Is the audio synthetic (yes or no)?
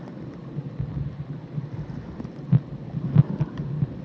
no